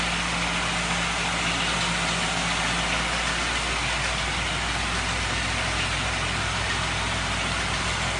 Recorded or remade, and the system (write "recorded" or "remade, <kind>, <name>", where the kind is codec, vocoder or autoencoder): recorded